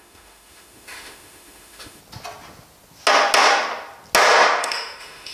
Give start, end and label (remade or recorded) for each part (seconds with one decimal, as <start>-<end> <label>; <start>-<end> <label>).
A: 0.0-2.0 remade; 2.0-4.6 recorded; 4.6-5.3 remade